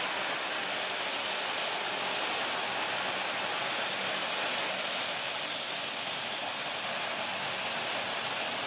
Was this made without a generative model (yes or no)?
yes